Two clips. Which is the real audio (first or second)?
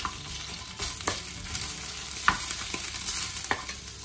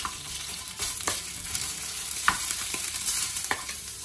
first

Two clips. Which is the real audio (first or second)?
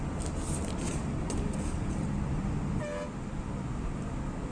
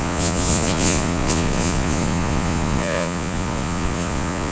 first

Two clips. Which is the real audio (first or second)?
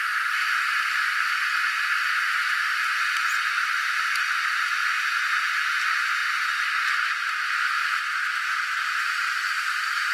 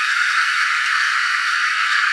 first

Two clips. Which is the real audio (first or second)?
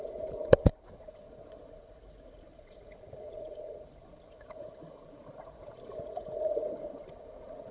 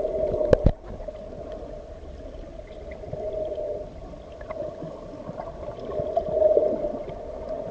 second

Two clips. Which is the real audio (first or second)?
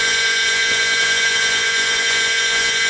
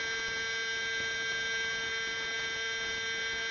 second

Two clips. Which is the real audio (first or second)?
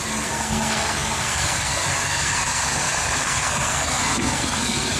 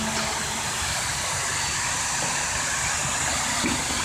second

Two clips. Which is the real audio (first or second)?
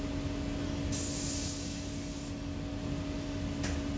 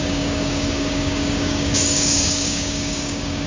first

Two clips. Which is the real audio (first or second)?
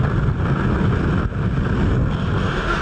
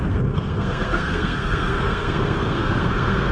first